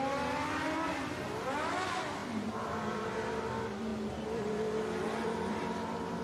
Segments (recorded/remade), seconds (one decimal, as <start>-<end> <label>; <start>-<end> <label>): 0.0-3.9 recorded; 3.9-4.5 remade; 4.5-6.2 recorded

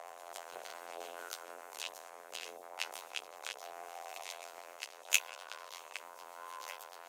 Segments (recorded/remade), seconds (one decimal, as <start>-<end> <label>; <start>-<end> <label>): 0.0-7.1 remade

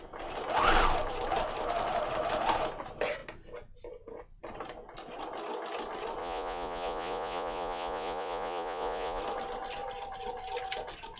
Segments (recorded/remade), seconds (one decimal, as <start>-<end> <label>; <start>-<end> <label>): 0.0-6.2 recorded; 6.2-9.2 remade; 9.2-11.2 recorded

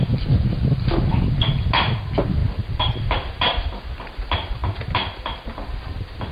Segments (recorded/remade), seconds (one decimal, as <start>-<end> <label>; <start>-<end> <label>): 0.0-2.4 recorded; 2.4-3.8 remade; 3.8-6.3 recorded

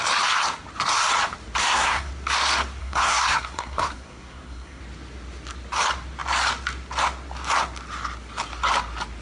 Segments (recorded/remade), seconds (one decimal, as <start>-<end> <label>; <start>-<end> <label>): 0.0-1.6 recorded; 1.6-2.1 remade; 2.1-2.8 recorded; 2.8-4.8 remade; 4.8-9.2 recorded